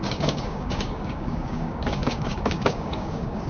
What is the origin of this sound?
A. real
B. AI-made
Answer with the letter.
B